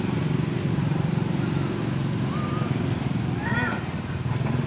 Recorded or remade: recorded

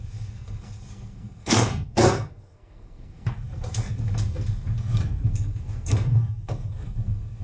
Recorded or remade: remade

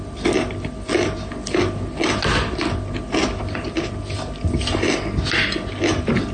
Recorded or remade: recorded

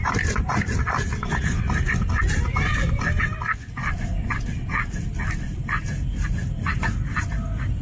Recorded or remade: recorded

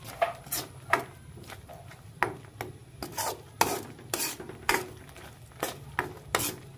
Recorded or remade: recorded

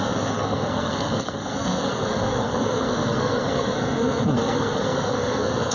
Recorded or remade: remade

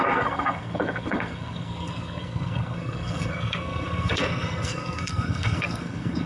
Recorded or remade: remade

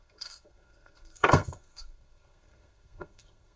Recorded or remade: remade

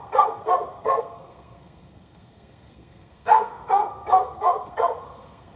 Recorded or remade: remade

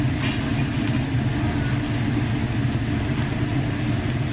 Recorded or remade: recorded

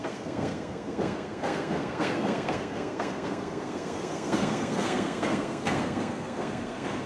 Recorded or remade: remade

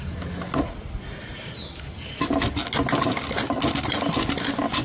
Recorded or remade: recorded